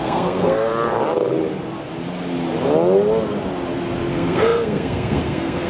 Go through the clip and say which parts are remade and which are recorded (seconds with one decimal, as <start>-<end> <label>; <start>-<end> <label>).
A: 0.0-0.7 remade; 0.7-4.1 recorded; 4.1-5.7 remade